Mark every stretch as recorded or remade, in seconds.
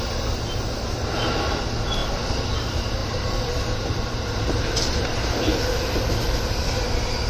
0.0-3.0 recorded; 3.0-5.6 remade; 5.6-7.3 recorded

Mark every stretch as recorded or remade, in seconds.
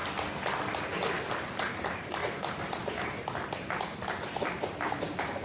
0.0-1.8 recorded; 1.8-5.4 remade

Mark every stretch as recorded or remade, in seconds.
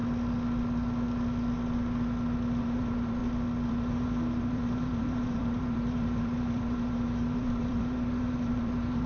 0.0-2.6 recorded; 2.6-3.2 remade; 3.2-3.7 recorded; 3.7-9.1 remade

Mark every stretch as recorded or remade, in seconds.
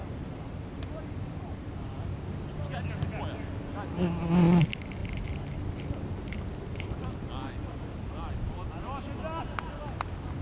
0.0-1.7 remade; 1.7-10.4 recorded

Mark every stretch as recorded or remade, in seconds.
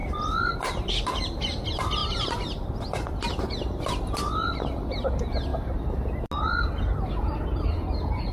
0.0-0.9 remade; 0.9-8.3 recorded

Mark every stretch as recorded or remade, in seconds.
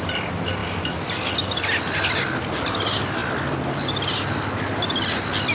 0.0-5.5 recorded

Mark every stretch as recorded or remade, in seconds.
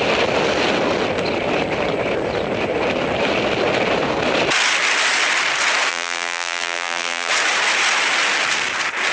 0.0-5.9 recorded; 5.9-7.3 remade; 7.3-9.1 recorded